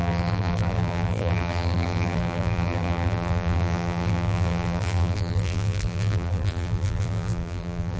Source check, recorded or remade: remade